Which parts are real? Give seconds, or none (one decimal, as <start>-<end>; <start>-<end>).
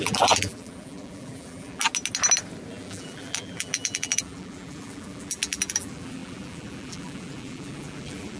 1.9-2.7